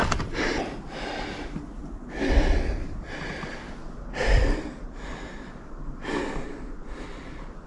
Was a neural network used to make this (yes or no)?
no